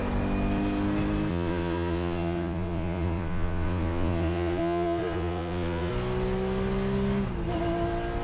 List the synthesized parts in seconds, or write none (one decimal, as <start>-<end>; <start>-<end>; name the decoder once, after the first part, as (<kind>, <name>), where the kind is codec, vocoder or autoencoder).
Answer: 1.3-5.9 (vocoder, Vocos)